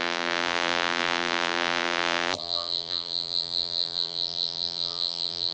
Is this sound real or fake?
fake